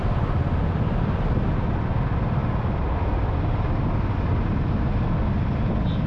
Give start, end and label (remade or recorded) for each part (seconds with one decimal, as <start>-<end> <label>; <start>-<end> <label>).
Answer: 0.0-6.1 recorded